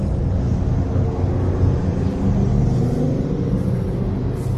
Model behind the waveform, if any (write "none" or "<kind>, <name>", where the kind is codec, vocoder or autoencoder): none